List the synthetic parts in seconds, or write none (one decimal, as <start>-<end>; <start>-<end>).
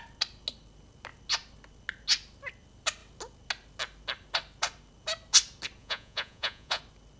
5.8-6.8